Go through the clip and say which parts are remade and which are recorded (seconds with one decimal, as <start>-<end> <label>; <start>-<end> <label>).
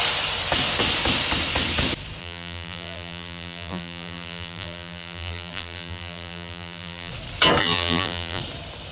0.0-2.2 recorded; 2.2-7.1 remade; 7.1-7.6 recorded; 7.6-8.4 remade; 8.4-8.9 recorded